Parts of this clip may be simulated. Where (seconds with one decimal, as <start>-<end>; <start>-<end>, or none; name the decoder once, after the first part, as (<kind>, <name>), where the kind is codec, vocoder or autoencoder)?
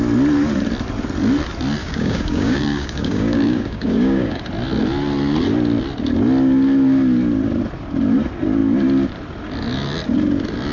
1.8-4.4 (codec, DAC)